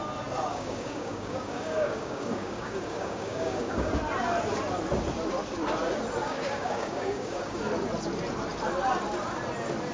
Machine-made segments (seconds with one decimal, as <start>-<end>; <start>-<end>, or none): 0.5-3.9; 6.2-7.6